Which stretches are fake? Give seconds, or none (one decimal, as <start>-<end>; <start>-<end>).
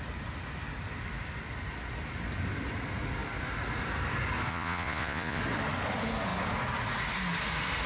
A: 4.5-5.4